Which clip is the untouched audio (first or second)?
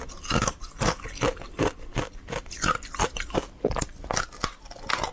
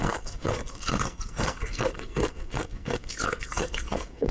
first